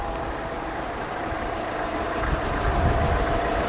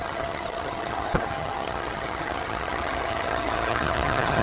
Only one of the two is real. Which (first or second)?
first